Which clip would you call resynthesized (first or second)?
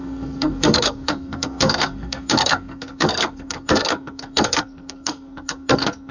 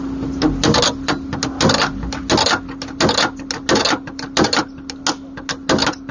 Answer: first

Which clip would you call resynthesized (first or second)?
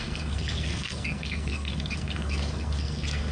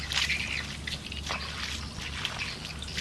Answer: first